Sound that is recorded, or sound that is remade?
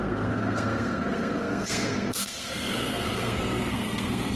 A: remade